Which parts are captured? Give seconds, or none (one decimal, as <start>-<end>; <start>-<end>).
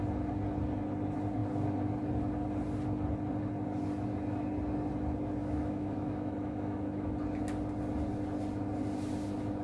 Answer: 0.0-5.4; 7.1-9.6